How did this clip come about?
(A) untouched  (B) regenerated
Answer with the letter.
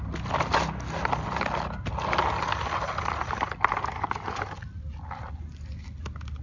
A